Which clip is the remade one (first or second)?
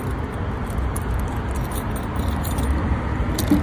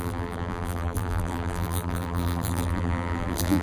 second